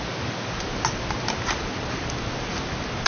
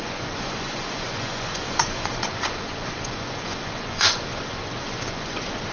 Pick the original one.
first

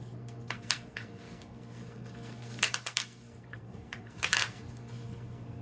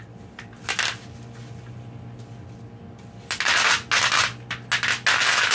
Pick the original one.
second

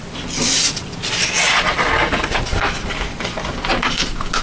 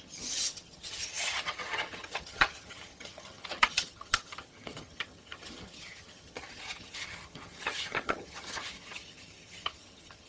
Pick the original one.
first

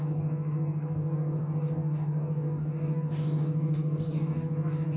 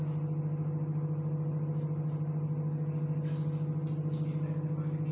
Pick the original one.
second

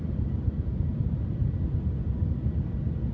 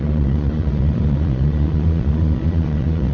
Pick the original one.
first